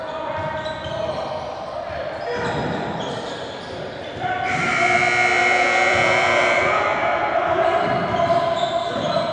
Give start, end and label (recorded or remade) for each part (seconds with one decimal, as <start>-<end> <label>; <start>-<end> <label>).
0.0-2.6 recorded; 2.6-4.5 remade; 4.5-5.4 recorded; 5.4-7.9 remade; 7.9-9.3 recorded